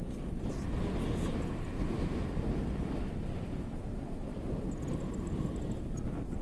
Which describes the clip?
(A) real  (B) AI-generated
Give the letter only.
A